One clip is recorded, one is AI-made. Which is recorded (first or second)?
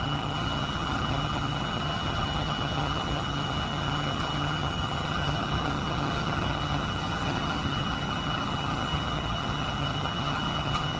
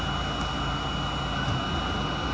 second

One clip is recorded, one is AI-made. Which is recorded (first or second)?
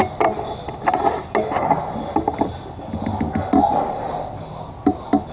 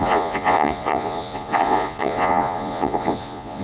first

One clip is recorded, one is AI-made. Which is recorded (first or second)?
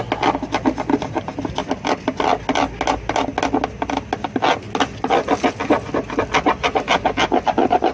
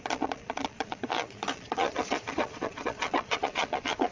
first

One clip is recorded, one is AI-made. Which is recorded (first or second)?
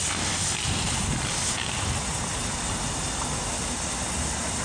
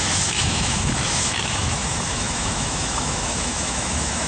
first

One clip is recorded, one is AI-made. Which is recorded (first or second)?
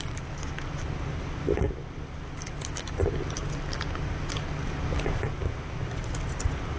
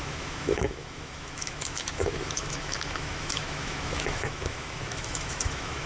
first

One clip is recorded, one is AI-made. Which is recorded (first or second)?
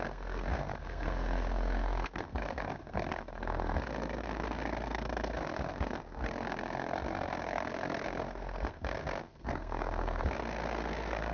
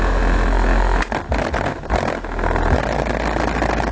second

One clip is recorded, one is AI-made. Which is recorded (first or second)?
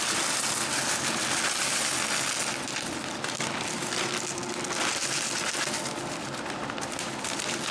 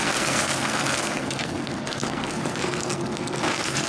first